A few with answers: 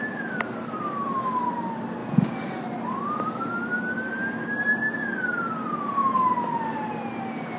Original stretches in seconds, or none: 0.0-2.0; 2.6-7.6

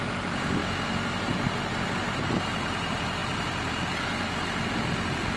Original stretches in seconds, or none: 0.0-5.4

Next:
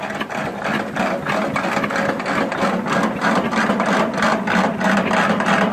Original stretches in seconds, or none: 0.0-5.7